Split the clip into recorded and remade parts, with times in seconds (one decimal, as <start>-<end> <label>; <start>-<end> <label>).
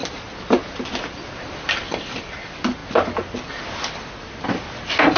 0.0-5.2 recorded